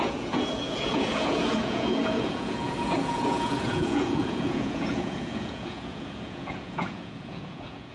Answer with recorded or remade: remade